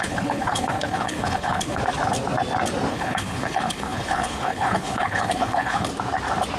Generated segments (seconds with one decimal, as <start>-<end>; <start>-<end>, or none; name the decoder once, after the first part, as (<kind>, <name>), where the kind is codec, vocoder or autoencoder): 0.0-1.8 (codec, HILCodec); 2.9-5.9